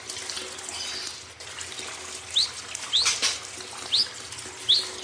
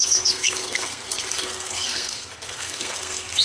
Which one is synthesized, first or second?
second